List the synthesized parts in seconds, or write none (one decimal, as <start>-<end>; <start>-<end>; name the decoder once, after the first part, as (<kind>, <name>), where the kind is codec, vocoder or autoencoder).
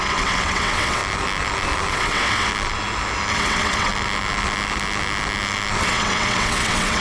0.0-1.0 (vocoder, WaveNeXt); 1.9-2.5; 3.3-3.9; 5.8-7.0